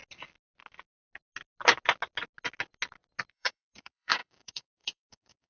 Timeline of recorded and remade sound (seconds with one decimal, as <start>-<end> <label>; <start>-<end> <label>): 0.0-3.3 recorded; 3.3-5.5 remade